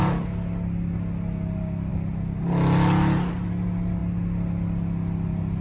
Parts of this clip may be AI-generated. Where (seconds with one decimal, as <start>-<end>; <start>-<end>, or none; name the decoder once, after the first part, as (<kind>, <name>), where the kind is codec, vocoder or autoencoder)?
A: none